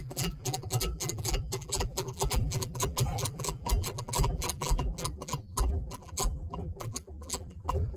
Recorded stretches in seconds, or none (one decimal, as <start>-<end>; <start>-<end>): none